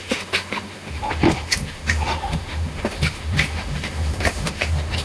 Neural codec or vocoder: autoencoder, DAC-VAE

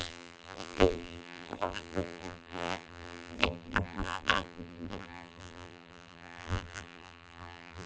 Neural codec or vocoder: vocoder, BigVGAN v2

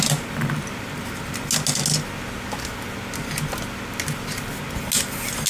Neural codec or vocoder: none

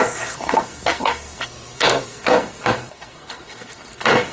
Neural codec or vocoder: codec, SNAC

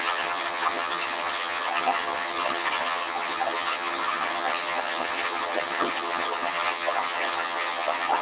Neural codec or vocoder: vocoder, HiFi-GAN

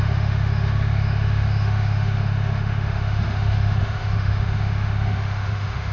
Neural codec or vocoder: autoencoder, DAC-VAE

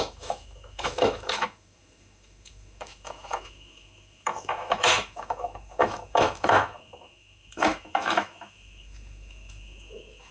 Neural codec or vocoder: autoencoder, DAC-VAE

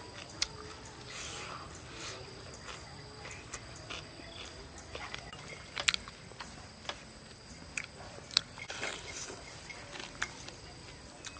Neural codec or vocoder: none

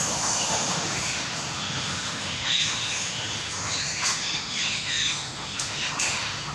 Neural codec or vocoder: autoencoder, DAC-VAE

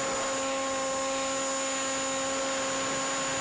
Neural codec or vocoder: none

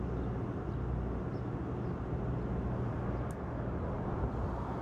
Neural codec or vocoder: none